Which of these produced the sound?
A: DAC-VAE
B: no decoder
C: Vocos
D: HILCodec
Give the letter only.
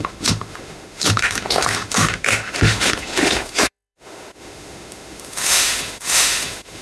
A